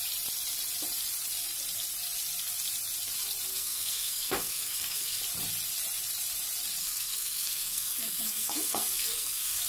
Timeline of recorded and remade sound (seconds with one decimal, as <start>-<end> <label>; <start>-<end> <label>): 0.0-3.5 recorded; 3.5-5.2 remade; 5.2-6.8 recorded; 6.8-9.7 remade